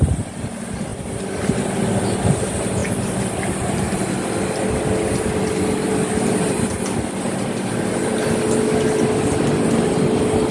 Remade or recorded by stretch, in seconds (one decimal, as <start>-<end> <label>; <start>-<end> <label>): 0.0-10.5 recorded